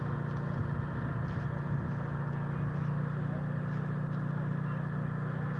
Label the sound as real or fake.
real